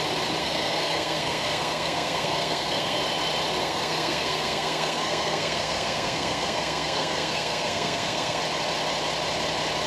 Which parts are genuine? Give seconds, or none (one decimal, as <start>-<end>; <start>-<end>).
0.0-0.4; 3.0-3.6; 8.4-9.9